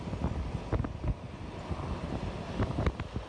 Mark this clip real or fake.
real